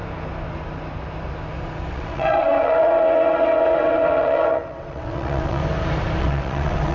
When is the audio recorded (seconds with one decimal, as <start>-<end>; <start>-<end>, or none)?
0.0-1.9; 5.6-6.2